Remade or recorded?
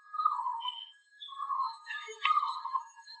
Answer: remade